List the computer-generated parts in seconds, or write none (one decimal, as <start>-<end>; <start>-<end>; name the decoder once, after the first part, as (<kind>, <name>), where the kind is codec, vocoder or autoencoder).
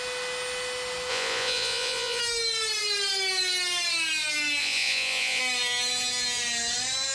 1.1-2.2 (vocoder, Vocos); 4.6-5.4